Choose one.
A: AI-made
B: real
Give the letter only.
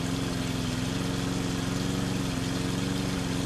B